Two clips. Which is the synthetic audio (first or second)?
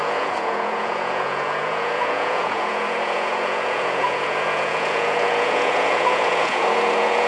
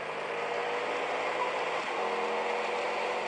first